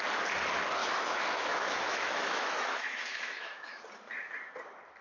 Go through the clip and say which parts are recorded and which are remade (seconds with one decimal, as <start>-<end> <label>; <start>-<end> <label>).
0.0-0.8 recorded; 0.8-3.8 remade; 3.8-5.0 recorded